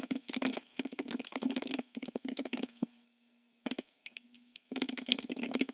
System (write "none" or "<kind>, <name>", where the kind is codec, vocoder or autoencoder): codec, SNAC